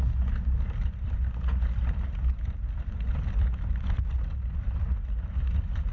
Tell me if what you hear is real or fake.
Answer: real